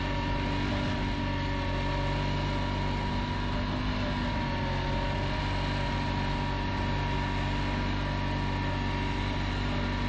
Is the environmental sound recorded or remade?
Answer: recorded